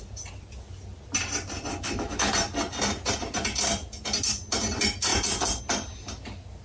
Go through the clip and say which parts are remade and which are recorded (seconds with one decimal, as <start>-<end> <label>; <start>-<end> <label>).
0.0-1.7 recorded; 1.7-2.3 remade; 2.3-6.6 recorded

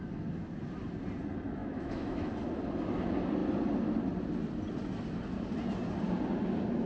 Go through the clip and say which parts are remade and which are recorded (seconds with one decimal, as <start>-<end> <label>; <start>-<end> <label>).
0.0-1.6 recorded; 1.6-2.3 remade; 2.3-6.9 recorded